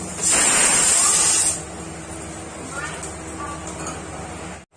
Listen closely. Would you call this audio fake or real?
real